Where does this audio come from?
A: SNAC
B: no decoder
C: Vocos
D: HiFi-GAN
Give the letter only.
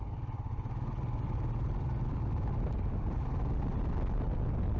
B